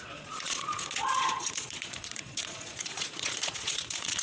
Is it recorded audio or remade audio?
remade